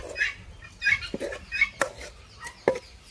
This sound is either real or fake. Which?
real